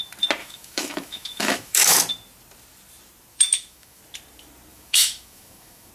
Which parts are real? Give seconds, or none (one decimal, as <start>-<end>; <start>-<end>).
0.0-0.4; 2.0-3.3; 4.0-4.7